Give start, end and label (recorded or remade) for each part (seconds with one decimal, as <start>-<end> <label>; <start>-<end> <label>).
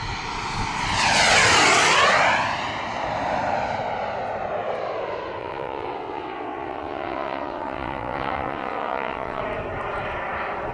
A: 0.0-5.4 recorded; 5.4-9.4 remade; 9.4-10.7 recorded